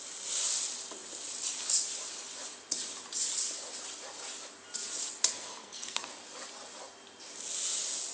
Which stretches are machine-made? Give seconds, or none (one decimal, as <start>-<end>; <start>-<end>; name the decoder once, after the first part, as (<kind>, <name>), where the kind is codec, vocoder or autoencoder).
5.3-6.1 (codec, SNAC)